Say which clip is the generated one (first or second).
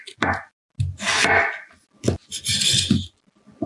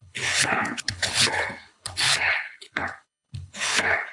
second